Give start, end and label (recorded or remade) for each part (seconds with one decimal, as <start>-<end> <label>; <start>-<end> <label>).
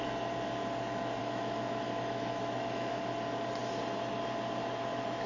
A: 0.0-1.2 recorded; 1.2-3.0 remade; 3.0-5.3 recorded